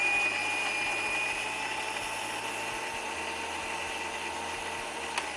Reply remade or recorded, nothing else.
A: recorded